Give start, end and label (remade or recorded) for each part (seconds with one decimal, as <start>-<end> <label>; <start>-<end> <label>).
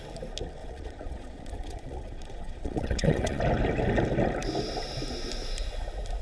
0.0-0.6 recorded; 0.6-3.4 remade; 3.4-6.2 recorded